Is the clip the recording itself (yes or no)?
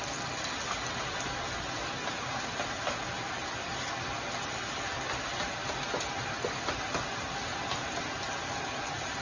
yes